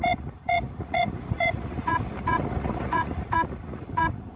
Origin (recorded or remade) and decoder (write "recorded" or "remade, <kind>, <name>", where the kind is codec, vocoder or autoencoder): remade, vocoder, Vocos